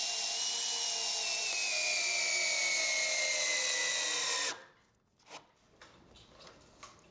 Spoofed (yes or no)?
no